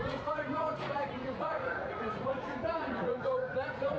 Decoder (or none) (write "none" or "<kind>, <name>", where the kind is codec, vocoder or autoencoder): vocoder, Vocos